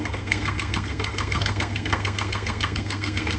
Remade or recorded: remade